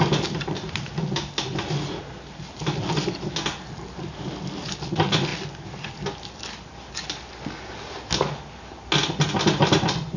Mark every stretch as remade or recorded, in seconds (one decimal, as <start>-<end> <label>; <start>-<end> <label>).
0.0-10.2 recorded